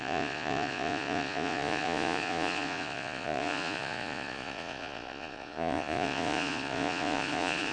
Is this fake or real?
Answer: fake